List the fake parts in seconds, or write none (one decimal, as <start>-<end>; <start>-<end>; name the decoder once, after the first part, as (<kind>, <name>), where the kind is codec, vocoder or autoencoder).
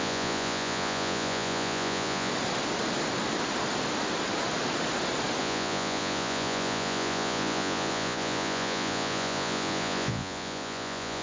0.0-2.3 (vocoder, Vocos); 5.4-11.2